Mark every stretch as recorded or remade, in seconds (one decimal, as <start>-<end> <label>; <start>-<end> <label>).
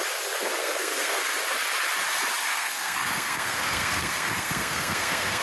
0.0-0.6 recorded; 0.6-1.2 remade; 1.2-2.5 recorded; 2.5-5.4 remade